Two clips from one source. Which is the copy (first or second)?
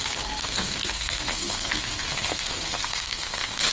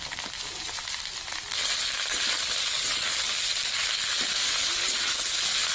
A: first